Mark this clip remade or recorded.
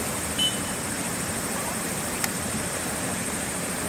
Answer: remade